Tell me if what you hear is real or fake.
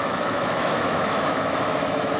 fake